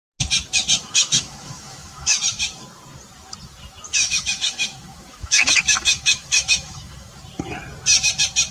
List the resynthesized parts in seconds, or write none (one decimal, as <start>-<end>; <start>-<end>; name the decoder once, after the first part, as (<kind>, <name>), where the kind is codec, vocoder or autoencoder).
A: 0.8-2.2 (autoencoder, DAC-VAE); 3.9-7.1